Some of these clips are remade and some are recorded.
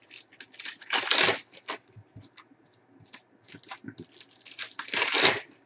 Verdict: recorded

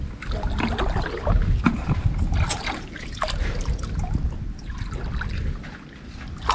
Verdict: recorded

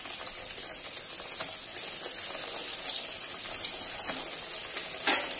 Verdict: recorded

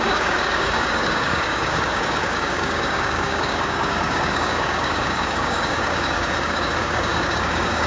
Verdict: remade